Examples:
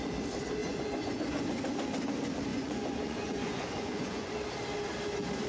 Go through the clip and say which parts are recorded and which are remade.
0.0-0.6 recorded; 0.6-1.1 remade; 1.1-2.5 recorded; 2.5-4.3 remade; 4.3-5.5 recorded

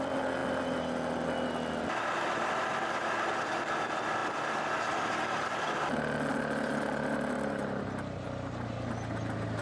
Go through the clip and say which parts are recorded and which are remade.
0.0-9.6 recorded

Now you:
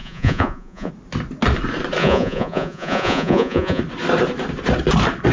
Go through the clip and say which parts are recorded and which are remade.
0.0-0.9 remade; 0.9-2.0 recorded; 2.0-3.8 remade; 3.8-5.3 recorded

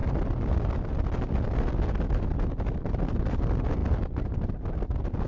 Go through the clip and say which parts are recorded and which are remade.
0.0-5.3 recorded

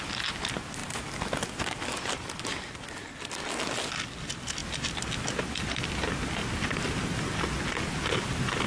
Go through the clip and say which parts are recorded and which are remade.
0.0-8.7 recorded